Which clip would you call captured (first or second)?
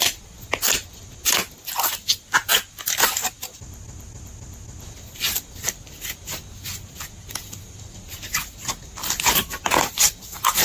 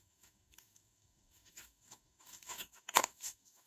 first